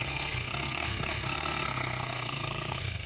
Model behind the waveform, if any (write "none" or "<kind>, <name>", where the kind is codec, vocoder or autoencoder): codec, SNAC